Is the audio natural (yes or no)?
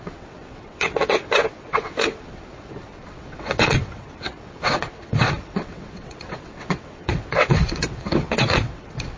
no